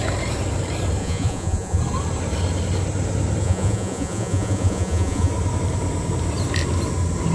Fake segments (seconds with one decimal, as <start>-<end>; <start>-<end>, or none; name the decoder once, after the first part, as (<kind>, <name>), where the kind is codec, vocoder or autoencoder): 1.0-1.8 (vocoder, Vocos); 3.4-5.3